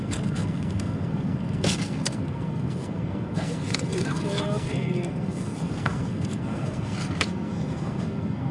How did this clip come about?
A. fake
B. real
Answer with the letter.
A